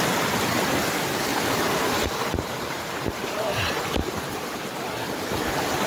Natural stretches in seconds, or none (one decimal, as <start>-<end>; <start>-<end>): 0.0-1.3; 4.8-5.9